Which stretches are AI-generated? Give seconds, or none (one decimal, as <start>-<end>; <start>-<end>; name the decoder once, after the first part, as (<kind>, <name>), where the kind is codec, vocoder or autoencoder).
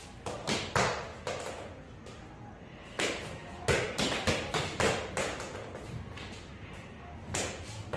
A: none